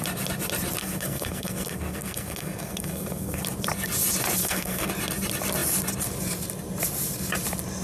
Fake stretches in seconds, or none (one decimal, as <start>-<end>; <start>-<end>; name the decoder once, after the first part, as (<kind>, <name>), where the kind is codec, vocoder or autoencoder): 0.8-3.4 (codec, SNAC); 4.4-4.9